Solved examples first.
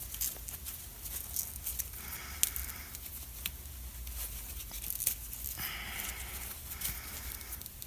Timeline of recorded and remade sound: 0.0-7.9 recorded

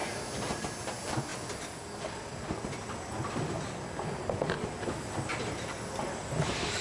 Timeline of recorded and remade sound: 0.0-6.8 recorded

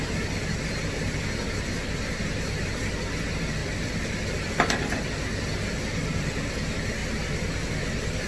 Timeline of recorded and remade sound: 0.0-3.6 recorded; 3.6-4.5 remade; 4.5-8.3 recorded